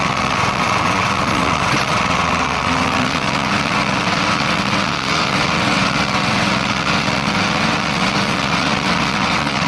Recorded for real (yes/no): no